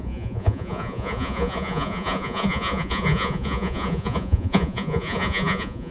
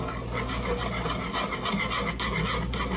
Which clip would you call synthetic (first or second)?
first